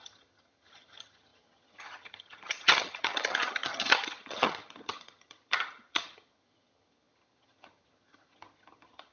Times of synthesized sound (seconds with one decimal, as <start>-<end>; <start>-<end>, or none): 0.0-9.1

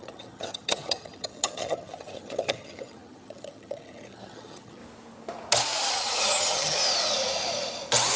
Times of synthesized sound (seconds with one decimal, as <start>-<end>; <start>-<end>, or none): 0.0-4.8; 5.9-6.8

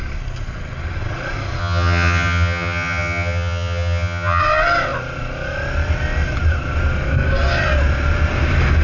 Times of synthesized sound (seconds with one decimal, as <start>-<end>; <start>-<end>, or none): 1.6-4.4